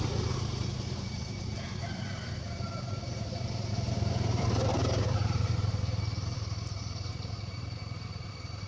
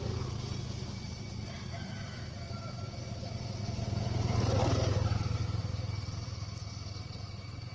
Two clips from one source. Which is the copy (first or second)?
first